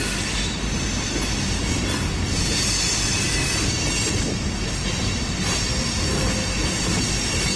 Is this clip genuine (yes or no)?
yes